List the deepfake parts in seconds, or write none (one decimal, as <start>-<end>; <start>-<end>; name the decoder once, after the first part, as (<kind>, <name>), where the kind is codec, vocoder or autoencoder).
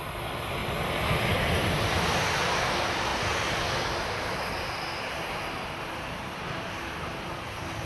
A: 3.1-7.9 (vocoder, BigVGAN v2)